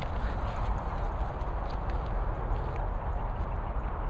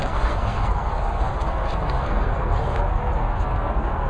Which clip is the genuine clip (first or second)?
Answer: first